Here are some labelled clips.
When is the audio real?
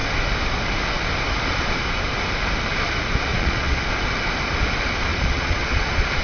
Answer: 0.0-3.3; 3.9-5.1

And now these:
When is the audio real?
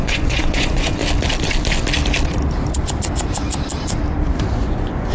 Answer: 1.0-4.1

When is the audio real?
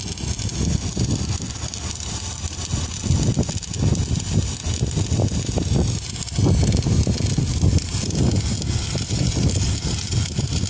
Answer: 0.0-10.7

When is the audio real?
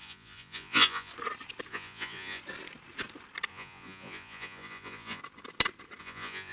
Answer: 1.1-1.7; 2.4-3.5; 5.2-6.0